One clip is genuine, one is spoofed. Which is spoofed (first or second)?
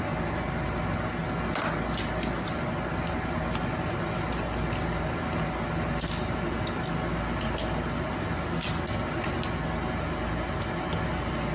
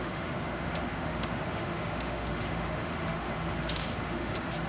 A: second